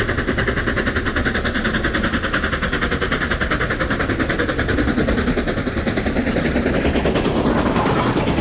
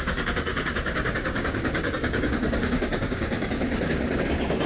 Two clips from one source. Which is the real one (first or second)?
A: first